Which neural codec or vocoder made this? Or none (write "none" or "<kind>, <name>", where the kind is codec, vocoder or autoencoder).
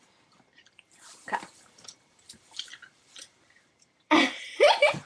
vocoder, BigVGAN v2